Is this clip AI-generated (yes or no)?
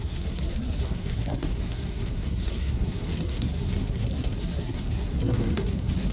yes